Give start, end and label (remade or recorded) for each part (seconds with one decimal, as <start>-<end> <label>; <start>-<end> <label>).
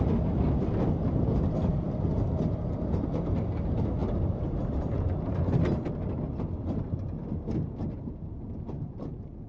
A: 0.0-9.5 recorded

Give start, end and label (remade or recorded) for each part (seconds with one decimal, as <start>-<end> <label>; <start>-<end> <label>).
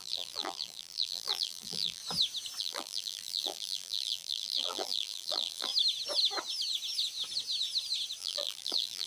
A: 0.0-2.0 remade; 2.0-2.6 recorded; 2.6-5.7 remade; 5.7-8.2 recorded; 8.2-9.1 remade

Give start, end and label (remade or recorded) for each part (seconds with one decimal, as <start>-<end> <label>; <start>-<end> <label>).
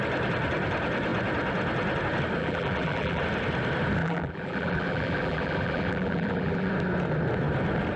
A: 0.0-2.4 recorded; 2.4-3.2 remade; 3.2-4.0 recorded; 4.0-6.7 remade; 6.7-8.0 recorded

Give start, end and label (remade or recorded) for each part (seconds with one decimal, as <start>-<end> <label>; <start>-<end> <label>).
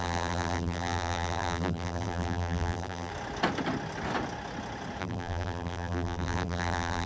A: 0.0-3.1 remade; 3.1-5.0 recorded; 5.0-7.1 remade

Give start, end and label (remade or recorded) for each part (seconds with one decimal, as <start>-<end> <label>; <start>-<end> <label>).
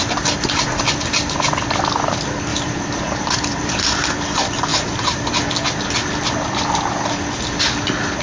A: 0.0-2.5 recorded; 2.5-3.9 remade; 3.9-4.7 recorded; 4.7-5.2 remade; 5.2-8.2 recorded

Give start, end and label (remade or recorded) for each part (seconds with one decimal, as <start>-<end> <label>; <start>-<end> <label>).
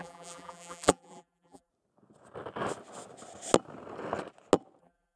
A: 0.0-1.7 remade; 1.7-4.8 recorded; 4.8-5.2 remade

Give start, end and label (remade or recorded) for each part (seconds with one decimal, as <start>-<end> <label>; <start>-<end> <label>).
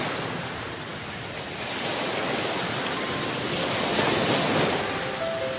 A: 0.0-0.9 recorded; 0.9-4.3 remade; 4.3-5.6 recorded